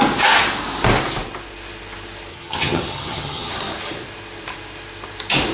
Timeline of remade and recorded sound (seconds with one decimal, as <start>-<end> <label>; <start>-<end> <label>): 0.0-2.3 recorded; 2.3-3.5 remade; 3.5-5.5 recorded